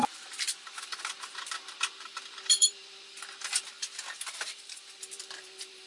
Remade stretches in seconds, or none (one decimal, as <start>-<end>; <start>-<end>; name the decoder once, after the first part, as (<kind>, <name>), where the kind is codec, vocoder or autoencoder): 0.0-2.8 (vocoder, BigVGAN v2); 4.1-5.9